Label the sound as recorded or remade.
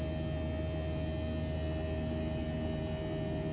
recorded